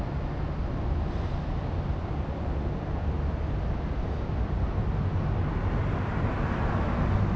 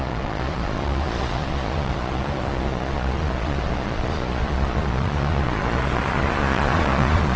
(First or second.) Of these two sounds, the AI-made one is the second